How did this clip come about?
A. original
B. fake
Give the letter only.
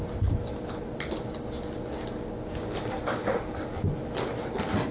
A